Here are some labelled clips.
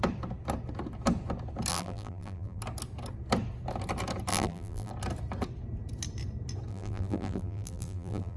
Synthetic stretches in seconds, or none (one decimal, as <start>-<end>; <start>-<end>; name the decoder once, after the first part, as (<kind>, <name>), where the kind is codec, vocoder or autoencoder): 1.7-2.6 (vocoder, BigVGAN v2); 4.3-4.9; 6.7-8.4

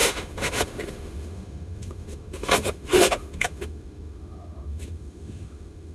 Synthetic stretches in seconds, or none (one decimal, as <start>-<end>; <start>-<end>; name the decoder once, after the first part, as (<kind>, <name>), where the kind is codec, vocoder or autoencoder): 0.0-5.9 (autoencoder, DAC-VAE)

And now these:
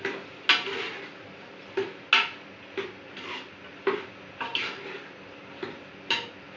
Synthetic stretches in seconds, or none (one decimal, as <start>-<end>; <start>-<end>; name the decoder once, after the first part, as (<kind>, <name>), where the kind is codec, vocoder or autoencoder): none

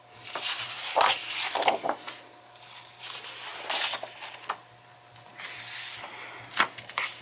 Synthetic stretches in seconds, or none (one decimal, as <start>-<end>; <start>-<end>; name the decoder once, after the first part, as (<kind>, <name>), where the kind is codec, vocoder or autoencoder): none